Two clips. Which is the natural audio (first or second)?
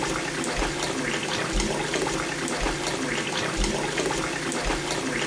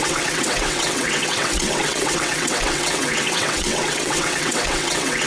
first